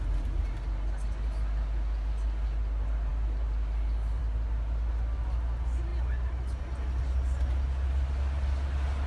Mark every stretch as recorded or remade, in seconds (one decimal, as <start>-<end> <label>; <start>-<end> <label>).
0.0-9.1 recorded